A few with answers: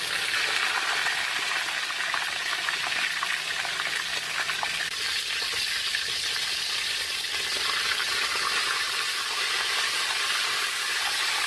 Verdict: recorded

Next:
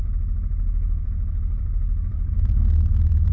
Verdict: remade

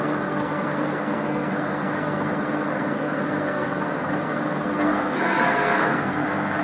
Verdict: remade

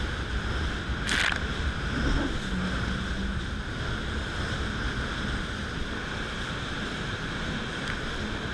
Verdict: recorded